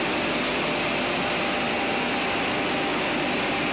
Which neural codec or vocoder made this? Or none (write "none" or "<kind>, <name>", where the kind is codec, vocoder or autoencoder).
none